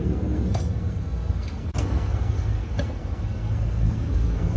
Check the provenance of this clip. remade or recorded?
remade